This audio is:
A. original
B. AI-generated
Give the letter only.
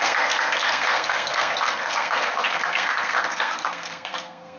B